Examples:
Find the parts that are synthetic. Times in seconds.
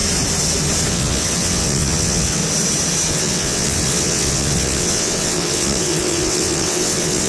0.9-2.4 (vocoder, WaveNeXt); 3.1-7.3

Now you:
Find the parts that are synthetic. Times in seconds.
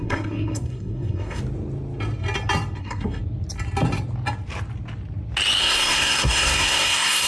0.0-1.4 (codec, SNAC); 2.8-3.2; 5.6-7.3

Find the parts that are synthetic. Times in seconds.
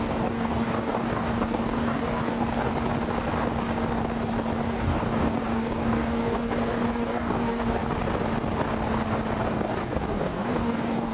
0.0-2.7 (codec, DAC); 4.7-7.8; 9.5-11.1